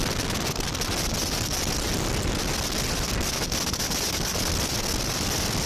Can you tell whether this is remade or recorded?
recorded